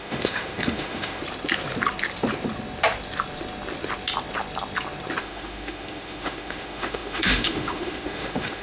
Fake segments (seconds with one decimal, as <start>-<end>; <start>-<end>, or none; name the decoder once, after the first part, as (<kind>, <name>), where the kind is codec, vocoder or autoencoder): 0.0-1.2 (autoencoder, DAC-VAE); 5.2-8.6